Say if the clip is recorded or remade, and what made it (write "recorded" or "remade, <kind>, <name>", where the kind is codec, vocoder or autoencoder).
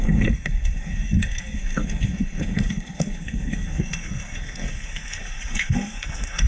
remade, codec, SNAC